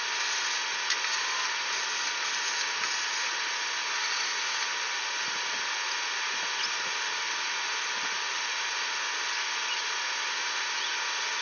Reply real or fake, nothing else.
real